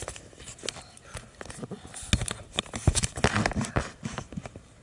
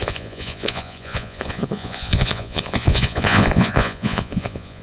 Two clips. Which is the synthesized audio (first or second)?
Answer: second